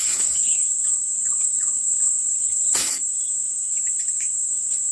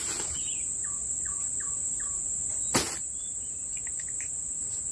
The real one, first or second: second